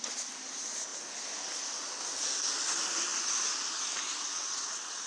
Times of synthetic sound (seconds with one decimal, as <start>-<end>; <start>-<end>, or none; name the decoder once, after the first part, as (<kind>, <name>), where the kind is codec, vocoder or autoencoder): 4.3-5.1 (vocoder, WaveNeXt)